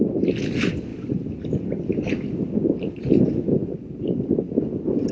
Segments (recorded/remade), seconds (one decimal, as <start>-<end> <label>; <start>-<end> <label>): 0.0-0.9 recorded; 0.9-3.2 remade; 3.2-5.1 recorded